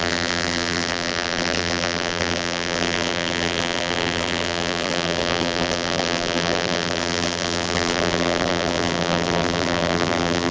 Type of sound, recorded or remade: remade